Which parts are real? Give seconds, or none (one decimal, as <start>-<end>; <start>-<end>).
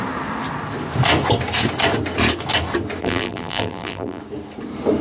0.0-3.0; 4.2-5.0